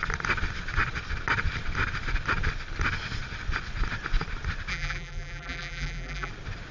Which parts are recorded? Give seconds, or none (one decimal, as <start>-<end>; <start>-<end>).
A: 0.0-4.7; 6.3-6.7